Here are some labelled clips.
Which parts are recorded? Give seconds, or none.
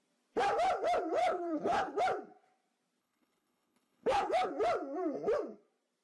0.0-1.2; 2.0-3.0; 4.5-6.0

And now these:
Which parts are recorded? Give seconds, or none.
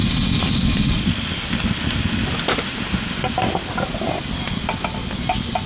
0.0-5.7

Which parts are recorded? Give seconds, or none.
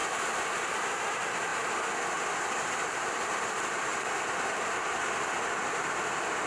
1.5-2.2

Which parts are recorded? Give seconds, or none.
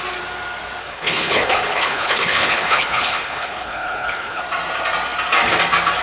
0.0-0.8; 4.4-6.0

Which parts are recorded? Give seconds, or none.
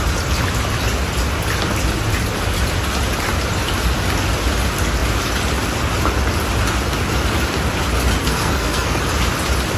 0.0-8.2; 9.0-9.8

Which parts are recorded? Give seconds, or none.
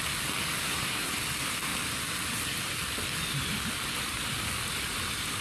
0.0-0.6; 1.1-5.4